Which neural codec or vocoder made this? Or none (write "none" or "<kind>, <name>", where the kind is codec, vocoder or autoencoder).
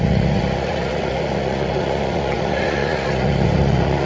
vocoder, Vocos